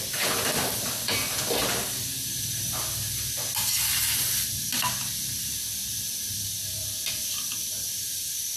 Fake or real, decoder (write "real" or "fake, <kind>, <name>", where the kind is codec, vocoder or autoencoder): real